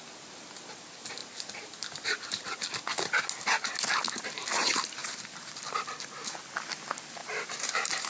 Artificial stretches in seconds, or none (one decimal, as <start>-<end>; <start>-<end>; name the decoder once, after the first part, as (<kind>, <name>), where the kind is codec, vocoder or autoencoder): 1.2-2.6 (vocoder, BigVGAN v2); 5.0-5.8; 7.2-8.1